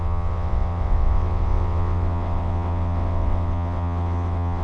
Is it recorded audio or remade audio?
remade